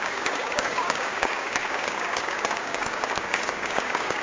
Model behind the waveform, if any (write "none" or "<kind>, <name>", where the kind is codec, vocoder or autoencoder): codec, DAC